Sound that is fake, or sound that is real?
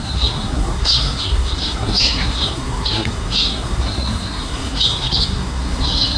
fake